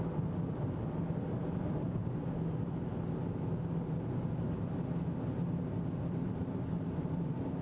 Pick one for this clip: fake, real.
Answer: real